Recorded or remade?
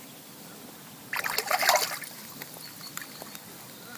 recorded